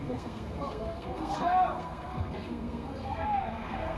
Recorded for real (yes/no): no